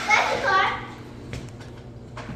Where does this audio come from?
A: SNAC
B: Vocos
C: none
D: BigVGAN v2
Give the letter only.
D